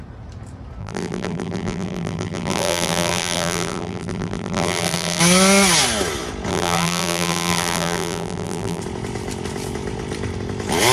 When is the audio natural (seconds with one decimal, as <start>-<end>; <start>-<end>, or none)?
0.0-0.8; 5.2-6.5; 8.8-10.9